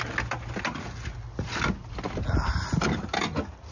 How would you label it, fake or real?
real